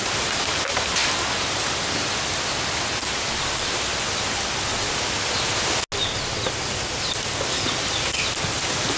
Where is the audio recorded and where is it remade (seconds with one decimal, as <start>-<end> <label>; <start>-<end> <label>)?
0.0-9.0 recorded